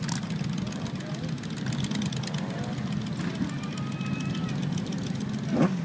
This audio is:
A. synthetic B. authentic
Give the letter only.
B